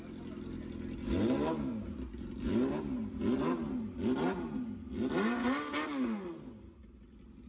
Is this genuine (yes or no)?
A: yes